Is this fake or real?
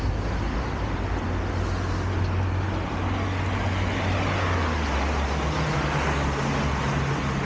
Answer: real